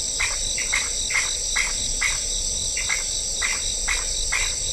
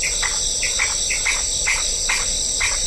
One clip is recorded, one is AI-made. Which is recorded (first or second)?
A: second